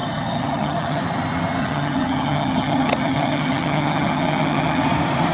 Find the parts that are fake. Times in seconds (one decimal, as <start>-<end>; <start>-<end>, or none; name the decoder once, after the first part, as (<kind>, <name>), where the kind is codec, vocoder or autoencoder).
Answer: 0.0-1.0 (vocoder, HiFi-GAN); 1.6-4.8